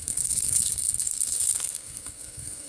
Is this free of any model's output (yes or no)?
no